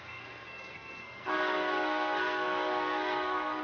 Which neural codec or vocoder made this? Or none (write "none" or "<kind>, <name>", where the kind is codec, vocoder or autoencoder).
codec, SNAC